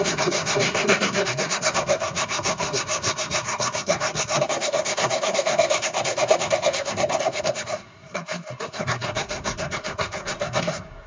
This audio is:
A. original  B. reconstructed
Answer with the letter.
B